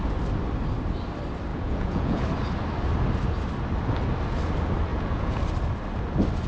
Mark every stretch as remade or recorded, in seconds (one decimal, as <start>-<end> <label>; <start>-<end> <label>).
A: 0.0-1.5 recorded; 1.5-2.2 remade; 2.2-4.9 recorded; 4.9-5.4 remade; 5.4-6.5 recorded